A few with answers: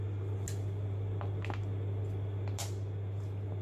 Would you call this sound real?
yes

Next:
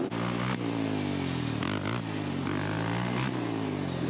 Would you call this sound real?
yes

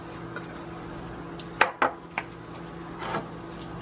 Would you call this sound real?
yes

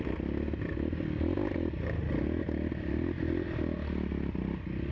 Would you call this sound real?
yes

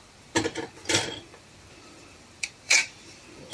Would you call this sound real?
no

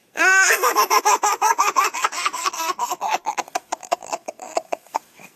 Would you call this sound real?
no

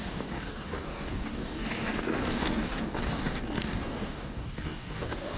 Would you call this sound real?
no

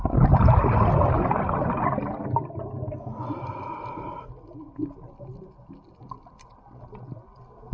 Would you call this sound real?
yes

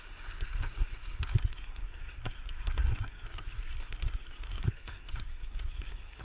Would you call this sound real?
no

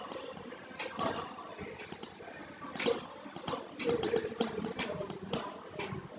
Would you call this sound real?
no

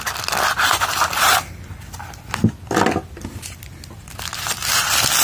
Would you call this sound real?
yes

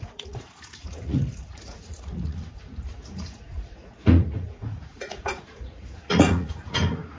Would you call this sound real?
no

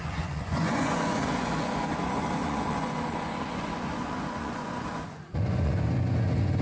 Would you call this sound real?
no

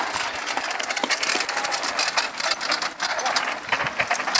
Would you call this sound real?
yes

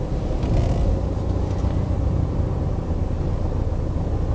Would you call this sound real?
yes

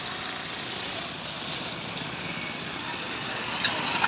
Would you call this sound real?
yes